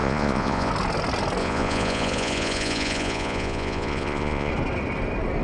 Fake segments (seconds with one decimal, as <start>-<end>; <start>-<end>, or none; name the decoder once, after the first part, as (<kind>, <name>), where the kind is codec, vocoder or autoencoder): 0.0-0.7 (vocoder, Vocos); 1.4-4.5